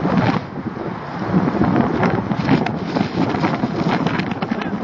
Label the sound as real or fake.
real